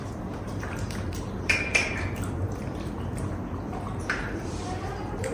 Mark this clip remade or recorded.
remade